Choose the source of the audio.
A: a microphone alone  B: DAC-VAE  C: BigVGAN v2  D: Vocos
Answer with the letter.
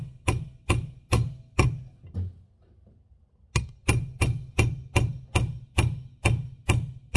A